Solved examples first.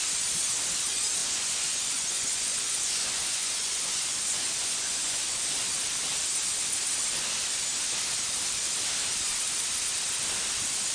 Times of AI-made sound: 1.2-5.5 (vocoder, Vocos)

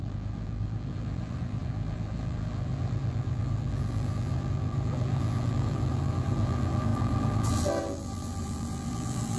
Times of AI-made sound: 0.0-9.4 (vocoder, BigVGAN v2)

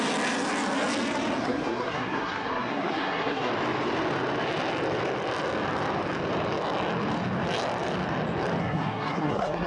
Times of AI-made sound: 1.4-3.5 (codec, SNAC); 8.6-9.7

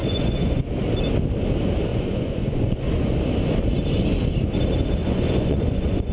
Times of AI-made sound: 0.0-0.6 (vocoder, Vocos); 1.9-3.1; 5.0-6.1

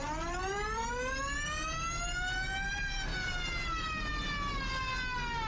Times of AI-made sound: none

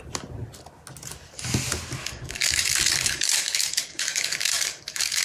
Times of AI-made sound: 2.0-5.2 (codec, DAC)

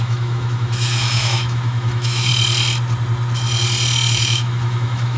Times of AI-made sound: 0.0-2.3 (autoencoder, DAC-VAE); 4.1-5.2